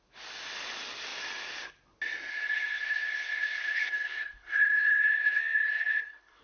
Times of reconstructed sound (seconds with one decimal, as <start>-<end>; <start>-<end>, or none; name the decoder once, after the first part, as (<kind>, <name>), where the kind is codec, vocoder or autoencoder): 2.3-6.4 (codec, HILCodec)